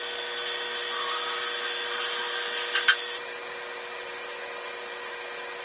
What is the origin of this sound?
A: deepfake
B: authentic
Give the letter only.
B